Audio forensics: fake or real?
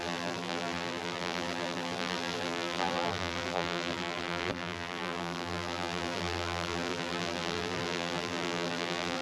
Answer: fake